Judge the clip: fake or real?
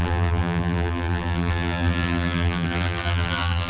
fake